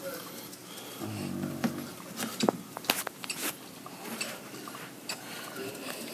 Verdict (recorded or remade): recorded